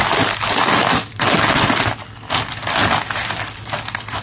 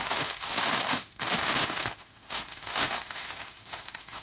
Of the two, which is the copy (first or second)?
second